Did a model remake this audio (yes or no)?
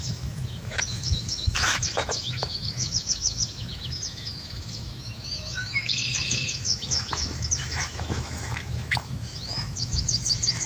yes